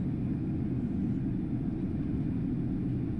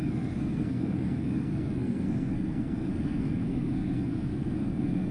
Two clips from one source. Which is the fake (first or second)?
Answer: second